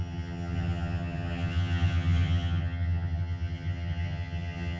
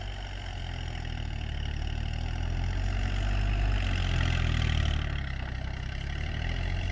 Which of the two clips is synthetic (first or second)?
first